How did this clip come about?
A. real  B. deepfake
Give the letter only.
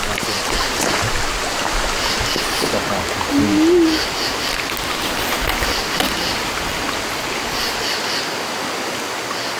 A